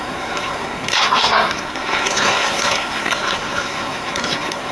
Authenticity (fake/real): fake